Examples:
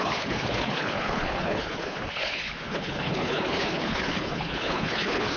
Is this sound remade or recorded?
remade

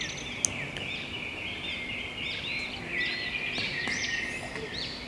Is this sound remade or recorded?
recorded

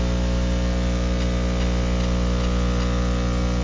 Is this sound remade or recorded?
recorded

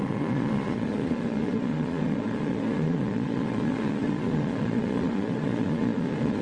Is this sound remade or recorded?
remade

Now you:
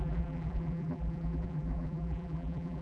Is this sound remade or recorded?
remade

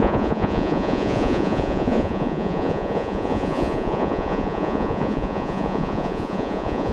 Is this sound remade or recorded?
remade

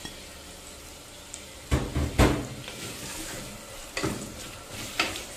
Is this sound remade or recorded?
recorded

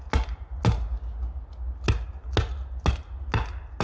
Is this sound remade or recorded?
recorded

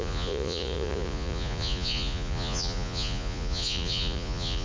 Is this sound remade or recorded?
remade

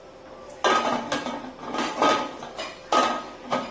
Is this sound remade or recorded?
recorded